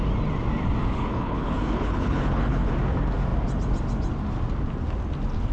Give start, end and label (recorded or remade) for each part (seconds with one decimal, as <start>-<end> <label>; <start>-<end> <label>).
0.0-0.8 recorded; 0.8-2.7 remade; 2.7-5.5 recorded